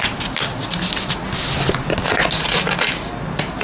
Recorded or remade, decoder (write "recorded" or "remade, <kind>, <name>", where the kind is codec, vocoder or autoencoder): recorded